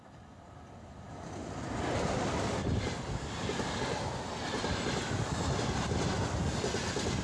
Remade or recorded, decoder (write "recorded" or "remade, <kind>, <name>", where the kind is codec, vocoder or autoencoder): recorded